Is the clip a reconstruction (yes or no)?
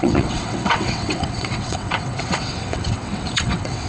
yes